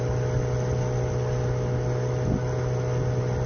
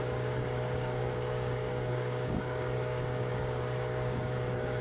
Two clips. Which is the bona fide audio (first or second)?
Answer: first